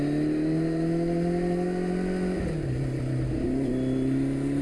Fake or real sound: real